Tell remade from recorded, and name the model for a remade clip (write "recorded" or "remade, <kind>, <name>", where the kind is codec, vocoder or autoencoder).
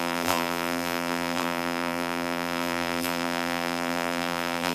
remade, vocoder, BigVGAN v2